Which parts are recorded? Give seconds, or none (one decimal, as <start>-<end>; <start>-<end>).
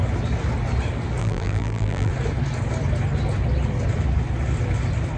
0.0-1.2; 2.1-5.2